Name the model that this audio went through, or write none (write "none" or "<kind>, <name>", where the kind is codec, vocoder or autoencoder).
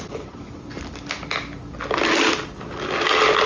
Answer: none